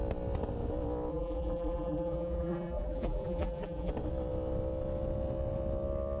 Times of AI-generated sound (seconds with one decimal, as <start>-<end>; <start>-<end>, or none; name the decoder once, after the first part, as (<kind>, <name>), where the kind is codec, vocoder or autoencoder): 1.1-3.9 (vocoder, BigVGAN v2)